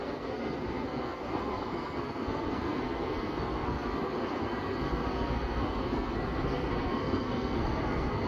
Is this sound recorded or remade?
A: remade